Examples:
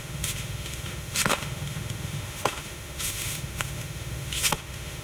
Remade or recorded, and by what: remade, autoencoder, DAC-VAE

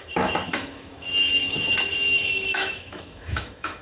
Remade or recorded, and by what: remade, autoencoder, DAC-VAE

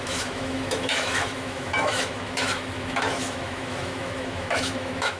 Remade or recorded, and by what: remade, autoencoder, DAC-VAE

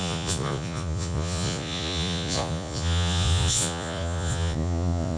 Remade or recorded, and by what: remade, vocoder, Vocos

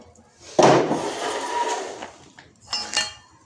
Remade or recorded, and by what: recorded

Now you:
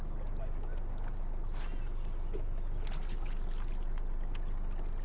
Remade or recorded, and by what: recorded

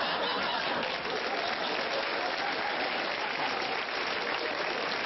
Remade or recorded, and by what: recorded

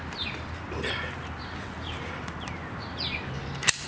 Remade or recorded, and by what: recorded